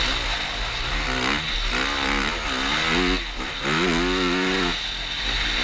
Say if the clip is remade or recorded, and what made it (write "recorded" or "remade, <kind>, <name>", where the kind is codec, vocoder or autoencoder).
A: recorded